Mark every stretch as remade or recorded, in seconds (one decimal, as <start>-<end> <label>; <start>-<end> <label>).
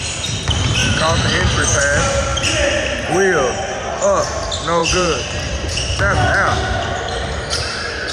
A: 0.0-0.8 recorded; 0.8-1.8 remade; 1.8-4.8 recorded; 4.8-5.8 remade; 5.8-8.1 recorded